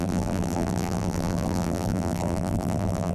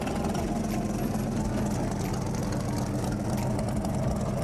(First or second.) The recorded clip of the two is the second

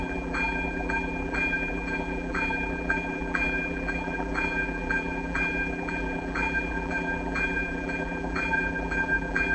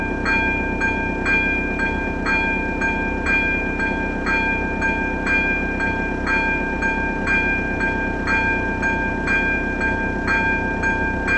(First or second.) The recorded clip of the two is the second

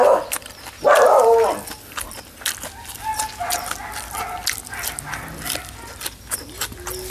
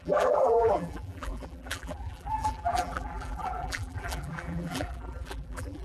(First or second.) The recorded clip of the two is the first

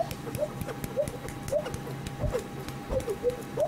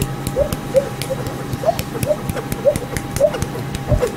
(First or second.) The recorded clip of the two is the first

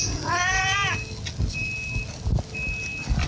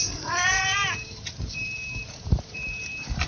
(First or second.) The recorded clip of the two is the first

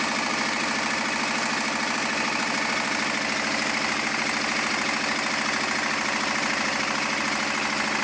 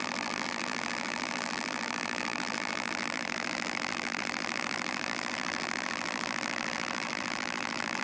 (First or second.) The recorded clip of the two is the first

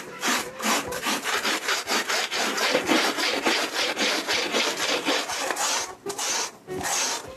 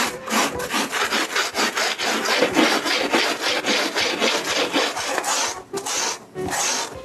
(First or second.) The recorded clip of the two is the second